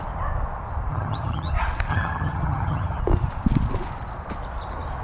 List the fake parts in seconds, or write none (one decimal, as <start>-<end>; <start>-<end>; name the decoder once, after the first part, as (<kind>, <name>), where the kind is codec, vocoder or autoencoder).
0.9-1.5 (vocoder, HiFi-GAN); 1.9-3.0